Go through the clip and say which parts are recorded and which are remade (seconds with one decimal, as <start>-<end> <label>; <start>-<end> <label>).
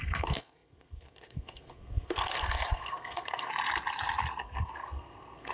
0.0-3.5 remade; 3.5-4.4 recorded; 4.4-5.5 remade